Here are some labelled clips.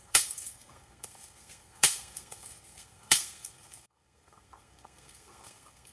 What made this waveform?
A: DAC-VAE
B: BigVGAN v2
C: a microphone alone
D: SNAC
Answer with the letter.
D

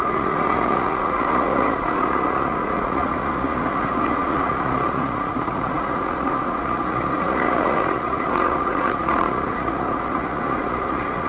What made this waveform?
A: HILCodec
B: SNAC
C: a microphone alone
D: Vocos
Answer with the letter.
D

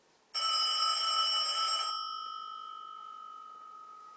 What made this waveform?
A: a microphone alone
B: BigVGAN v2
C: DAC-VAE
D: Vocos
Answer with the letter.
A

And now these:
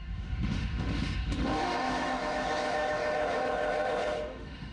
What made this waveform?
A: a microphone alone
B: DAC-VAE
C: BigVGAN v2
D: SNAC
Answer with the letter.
B